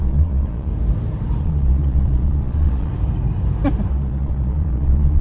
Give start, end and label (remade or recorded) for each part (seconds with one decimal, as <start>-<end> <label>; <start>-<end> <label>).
0.0-0.7 remade; 0.7-1.4 recorded; 1.4-2.9 remade; 2.9-3.9 recorded; 3.9-5.2 remade